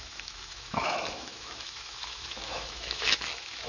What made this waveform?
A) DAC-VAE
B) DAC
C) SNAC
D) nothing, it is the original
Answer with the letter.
A